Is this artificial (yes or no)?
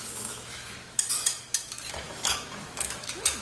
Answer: yes